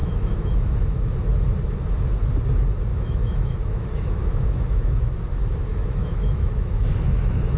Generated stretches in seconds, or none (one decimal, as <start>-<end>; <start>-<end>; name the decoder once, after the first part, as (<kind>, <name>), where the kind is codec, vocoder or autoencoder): 0.0-1.2 (autoencoder, DAC-VAE); 2.9-5.0; 5.7-7.6